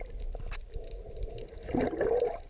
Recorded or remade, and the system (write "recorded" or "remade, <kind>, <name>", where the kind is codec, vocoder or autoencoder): recorded